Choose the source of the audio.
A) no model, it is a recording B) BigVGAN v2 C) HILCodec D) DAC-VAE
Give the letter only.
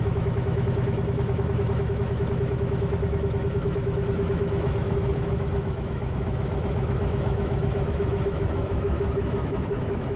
D